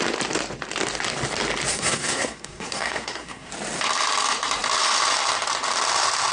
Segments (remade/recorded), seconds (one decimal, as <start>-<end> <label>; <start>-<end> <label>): 0.0-1.7 recorded; 1.7-3.5 remade; 3.5-6.3 recorded